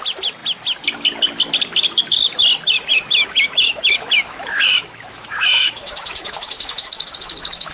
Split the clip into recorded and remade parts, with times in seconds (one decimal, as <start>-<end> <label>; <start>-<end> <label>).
0.0-2.9 recorded; 2.9-7.7 remade